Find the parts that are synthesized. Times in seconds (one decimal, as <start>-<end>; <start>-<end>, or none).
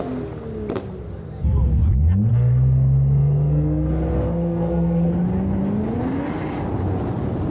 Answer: 2.3-5.1